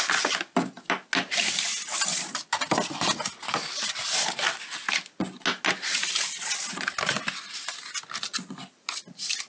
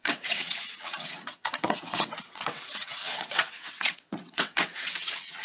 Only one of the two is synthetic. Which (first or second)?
second